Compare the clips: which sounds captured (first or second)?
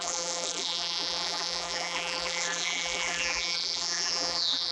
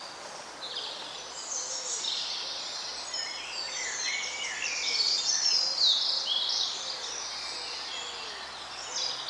second